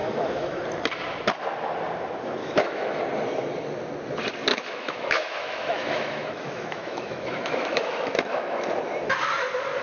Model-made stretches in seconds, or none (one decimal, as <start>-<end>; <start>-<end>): 0.0-0.6; 2.4-3.0; 4.5-8.7